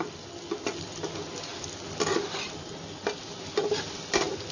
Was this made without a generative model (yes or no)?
yes